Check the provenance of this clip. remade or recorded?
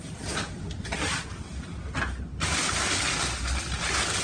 recorded